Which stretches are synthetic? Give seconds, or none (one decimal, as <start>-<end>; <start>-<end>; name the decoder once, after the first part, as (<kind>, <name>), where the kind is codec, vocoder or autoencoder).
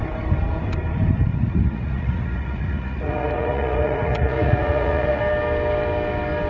1.3-5.2 (vocoder, Vocos)